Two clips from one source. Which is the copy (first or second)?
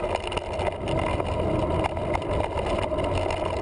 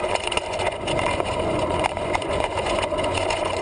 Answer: second